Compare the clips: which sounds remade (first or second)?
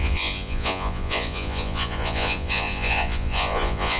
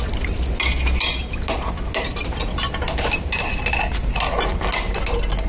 first